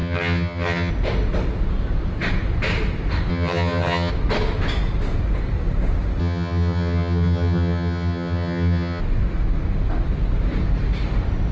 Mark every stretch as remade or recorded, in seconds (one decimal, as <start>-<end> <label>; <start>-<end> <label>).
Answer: 0.0-0.9 remade; 0.9-3.3 recorded; 3.3-4.1 remade; 4.1-6.2 recorded; 6.2-9.0 remade; 9.0-11.5 recorded